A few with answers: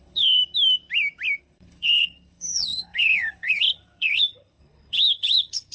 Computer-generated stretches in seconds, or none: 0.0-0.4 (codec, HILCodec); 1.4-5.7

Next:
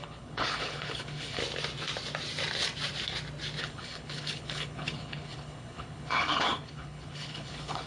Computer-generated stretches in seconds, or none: 0.0-1.4 (codec, HILCodec); 3.6-7.9

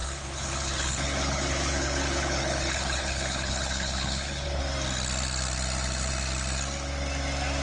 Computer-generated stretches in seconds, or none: 0.0-4.6 (codec, HILCodec)

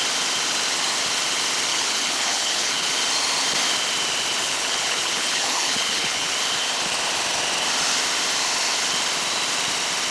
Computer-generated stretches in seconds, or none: 1.7-2.9 (codec, HILCodec); 4.4-6.3

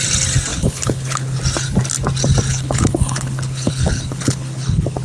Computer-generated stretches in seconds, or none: 0.5-1.4 (codec, HILCodec); 2.5-5.0

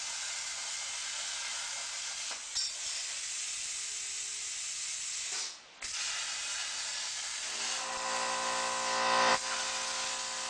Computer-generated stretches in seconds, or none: none